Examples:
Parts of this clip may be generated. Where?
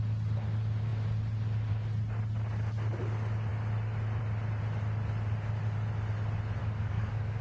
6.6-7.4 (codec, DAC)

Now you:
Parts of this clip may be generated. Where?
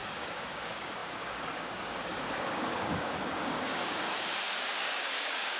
0.0-5.6 (codec, DAC)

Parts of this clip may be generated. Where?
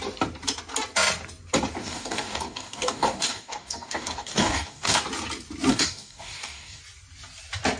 1.8-5.0 (codec, DAC); 5.7-6.8